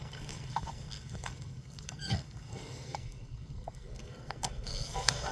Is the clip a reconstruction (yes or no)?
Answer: yes